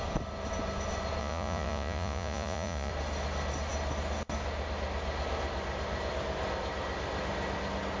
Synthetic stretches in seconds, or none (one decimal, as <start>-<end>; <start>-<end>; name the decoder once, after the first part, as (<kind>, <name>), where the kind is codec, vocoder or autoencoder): 1.2-2.9 (vocoder, Vocos)